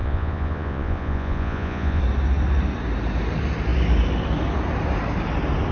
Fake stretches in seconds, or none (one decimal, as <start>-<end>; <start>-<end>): 0.0-2.0